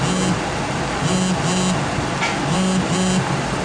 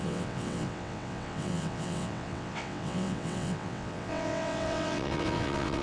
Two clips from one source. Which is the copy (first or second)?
second